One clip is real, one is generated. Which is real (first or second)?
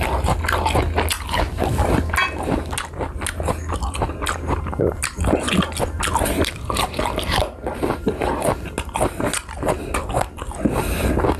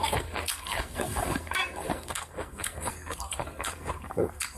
first